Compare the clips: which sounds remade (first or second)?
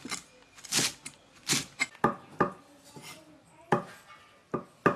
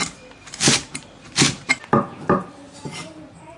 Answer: second